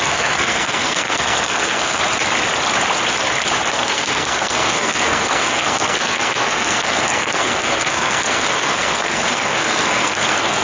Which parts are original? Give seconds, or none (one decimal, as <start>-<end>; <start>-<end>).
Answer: 2.0-3.7